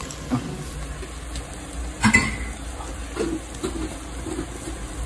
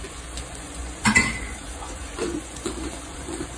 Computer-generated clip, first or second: second